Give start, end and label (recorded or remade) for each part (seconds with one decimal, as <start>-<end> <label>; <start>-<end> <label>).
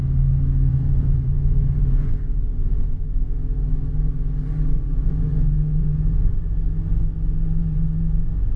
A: 0.0-0.7 recorded; 0.7-2.1 remade; 2.1-4.9 recorded; 4.9-6.3 remade; 6.3-7.6 recorded; 7.6-8.2 remade; 8.2-8.6 recorded